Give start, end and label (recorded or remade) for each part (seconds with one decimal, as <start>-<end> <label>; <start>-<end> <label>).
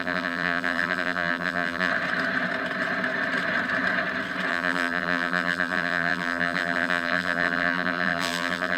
0.0-1.9 remade; 1.9-4.5 recorded; 4.5-8.8 remade